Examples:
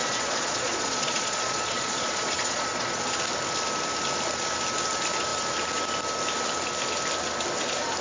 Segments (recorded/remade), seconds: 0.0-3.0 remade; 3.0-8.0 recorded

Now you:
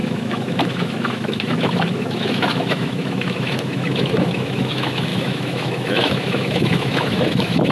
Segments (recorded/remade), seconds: 0.0-7.7 remade

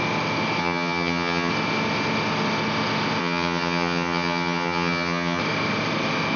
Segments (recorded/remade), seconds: 0.0-0.6 recorded; 0.6-1.5 remade; 1.5-3.2 recorded; 3.2-5.4 remade; 5.4-6.4 recorded

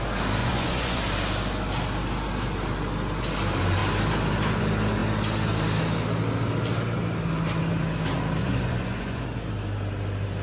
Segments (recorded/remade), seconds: 0.0-0.4 recorded; 0.4-1.0 remade; 1.0-8.4 recorded; 8.4-9.2 remade; 9.2-10.4 recorded